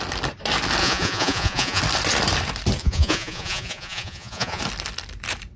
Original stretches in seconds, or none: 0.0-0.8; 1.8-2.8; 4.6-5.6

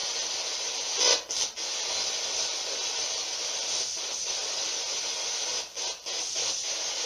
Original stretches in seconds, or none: 0.0-7.1